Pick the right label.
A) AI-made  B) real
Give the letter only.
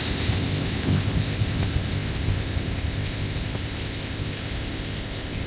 A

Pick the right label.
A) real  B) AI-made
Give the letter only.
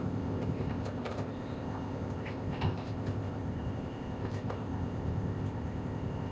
B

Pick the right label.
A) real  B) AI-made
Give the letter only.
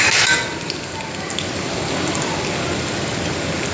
A